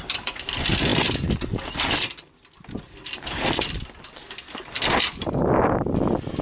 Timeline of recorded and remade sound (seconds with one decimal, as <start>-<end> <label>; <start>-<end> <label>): 0.0-6.4 recorded